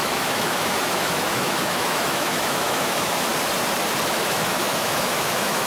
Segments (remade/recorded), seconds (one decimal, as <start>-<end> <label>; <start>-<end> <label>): 0.0-3.3 remade; 3.3-4.1 recorded; 4.1-5.7 remade